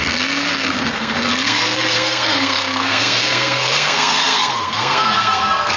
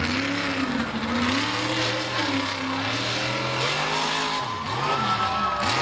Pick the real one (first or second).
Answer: second